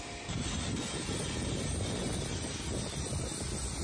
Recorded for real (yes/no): yes